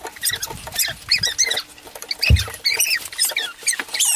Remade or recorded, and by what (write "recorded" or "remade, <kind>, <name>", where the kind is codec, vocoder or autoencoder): recorded